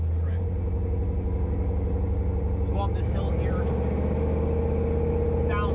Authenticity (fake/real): real